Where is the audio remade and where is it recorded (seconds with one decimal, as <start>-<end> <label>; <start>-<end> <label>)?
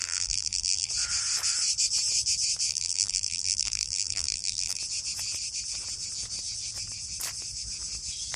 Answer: 0.0-0.9 remade; 0.9-2.7 recorded; 2.7-4.8 remade; 4.8-8.4 recorded